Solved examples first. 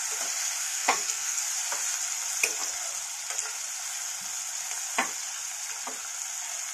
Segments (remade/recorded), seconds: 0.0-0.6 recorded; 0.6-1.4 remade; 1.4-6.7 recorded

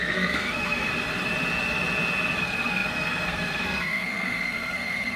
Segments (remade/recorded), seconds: 0.0-0.9 remade; 0.9-2.4 recorded; 2.4-5.2 remade

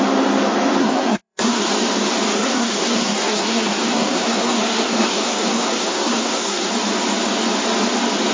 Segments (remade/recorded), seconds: 0.0-0.8 recorded; 0.8-1.7 remade; 1.7-2.3 recorded; 2.3-6.7 remade; 6.7-8.3 recorded

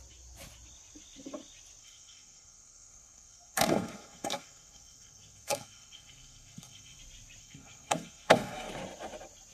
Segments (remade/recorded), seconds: 0.0-1.8 recorded; 1.8-7.0 remade; 7.0-7.4 recorded; 7.4-8.7 remade; 8.7-9.5 recorded

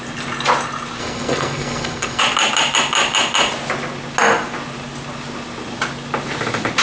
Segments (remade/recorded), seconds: 0.0-1.0 recorded; 1.0-2.2 remade; 2.2-6.8 recorded